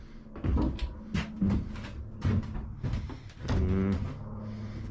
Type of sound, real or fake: real